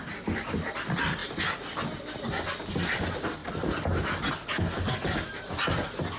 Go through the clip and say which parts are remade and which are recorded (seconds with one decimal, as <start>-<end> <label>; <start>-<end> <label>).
0.0-6.2 recorded

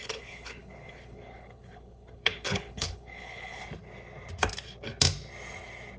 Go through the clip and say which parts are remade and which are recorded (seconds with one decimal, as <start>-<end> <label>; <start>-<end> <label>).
0.0-3.6 remade; 3.6-6.0 recorded

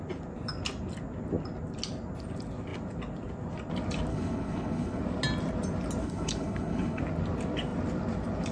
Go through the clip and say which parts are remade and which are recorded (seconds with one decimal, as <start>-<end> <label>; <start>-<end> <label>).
0.0-4.1 recorded; 4.1-5.0 remade; 5.0-6.0 recorded; 6.0-7.0 remade; 7.0-8.5 recorded